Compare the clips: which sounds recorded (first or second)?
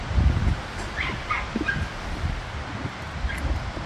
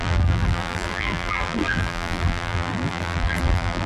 first